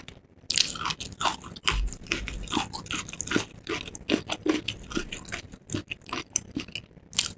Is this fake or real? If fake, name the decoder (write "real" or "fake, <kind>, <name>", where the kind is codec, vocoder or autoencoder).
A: real